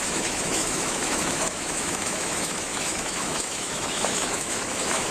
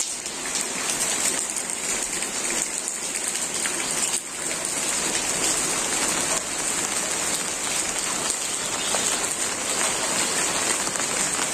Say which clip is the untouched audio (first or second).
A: second